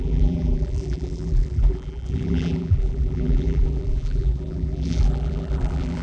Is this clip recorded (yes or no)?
no